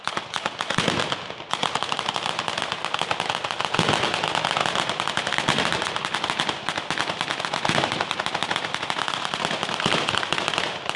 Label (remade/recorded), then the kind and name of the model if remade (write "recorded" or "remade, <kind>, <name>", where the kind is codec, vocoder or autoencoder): recorded